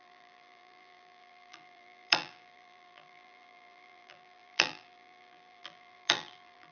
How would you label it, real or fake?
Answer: fake